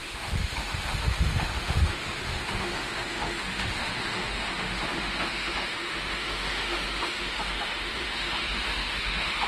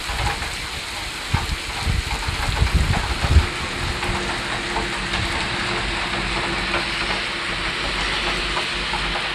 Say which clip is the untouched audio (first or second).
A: second